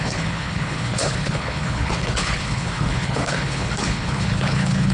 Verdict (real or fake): fake